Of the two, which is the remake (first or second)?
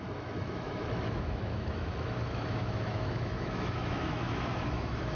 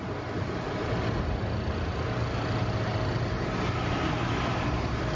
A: first